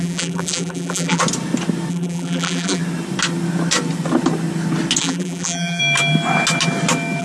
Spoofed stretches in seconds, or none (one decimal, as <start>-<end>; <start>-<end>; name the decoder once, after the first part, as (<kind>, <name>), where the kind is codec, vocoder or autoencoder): 0.0-1.2 (vocoder, BigVGAN v2); 1.9-2.8; 5.0-5.8